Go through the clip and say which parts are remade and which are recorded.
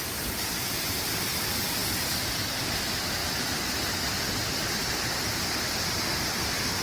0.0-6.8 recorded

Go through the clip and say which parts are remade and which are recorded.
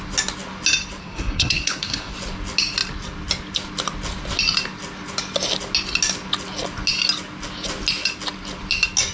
0.0-1.0 recorded; 1.0-2.1 remade; 2.1-9.1 recorded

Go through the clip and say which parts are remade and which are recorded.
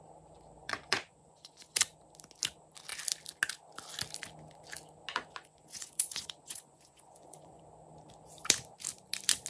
0.0-0.6 recorded; 0.6-1.7 remade; 1.7-5.4 recorded; 5.4-7.6 remade; 7.6-9.5 recorded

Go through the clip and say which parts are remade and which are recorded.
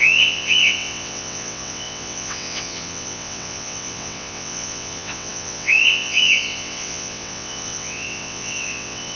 0.0-9.2 remade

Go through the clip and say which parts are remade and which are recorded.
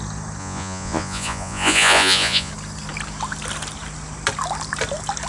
0.0-0.4 recorded; 0.4-2.5 remade; 2.5-5.3 recorded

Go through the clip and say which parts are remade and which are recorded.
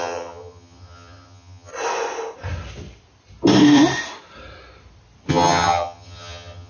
0.0-1.7 remade; 1.7-5.3 recorded; 5.3-6.7 remade